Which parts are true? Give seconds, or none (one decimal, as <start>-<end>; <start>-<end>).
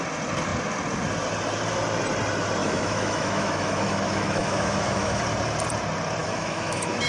0.0-2.6; 5.2-6.2